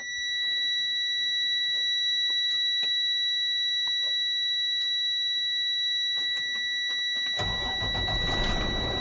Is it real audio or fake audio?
real